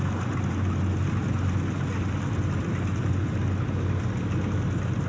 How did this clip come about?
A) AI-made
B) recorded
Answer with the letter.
B